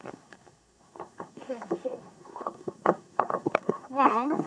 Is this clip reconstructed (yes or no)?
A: yes